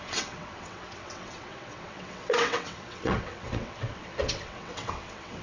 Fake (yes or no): yes